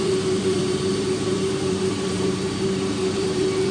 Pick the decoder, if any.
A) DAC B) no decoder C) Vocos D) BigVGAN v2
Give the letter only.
D